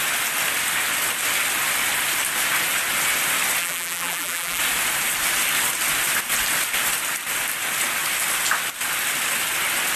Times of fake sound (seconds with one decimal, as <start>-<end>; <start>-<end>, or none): 3.6-4.6